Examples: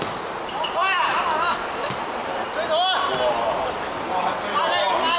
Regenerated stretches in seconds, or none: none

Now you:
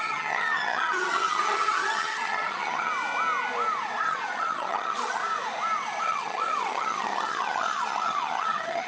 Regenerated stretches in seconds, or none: 0.0-2.9 (vocoder, HiFi-GAN); 4.0-5.2; 6.0-8.9